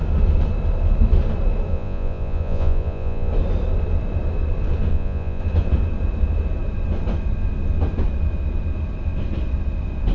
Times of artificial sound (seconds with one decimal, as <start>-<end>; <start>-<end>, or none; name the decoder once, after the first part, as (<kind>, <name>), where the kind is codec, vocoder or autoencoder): 1.7-3.3 (vocoder, Vocos); 4.9-5.4